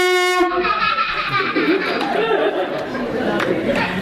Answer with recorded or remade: remade